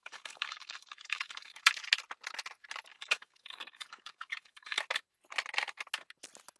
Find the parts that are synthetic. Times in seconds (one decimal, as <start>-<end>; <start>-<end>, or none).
0.0-1.7; 2.9-4.8